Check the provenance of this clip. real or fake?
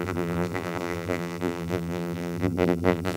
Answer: fake